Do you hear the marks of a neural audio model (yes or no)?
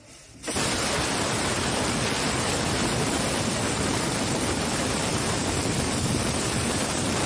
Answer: yes